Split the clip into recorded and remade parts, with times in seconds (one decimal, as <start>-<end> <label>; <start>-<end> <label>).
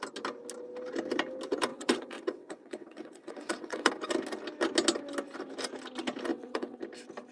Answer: 0.0-1.7 recorded; 1.7-3.9 remade; 3.9-6.3 recorded; 6.3-6.8 remade; 6.8-7.3 recorded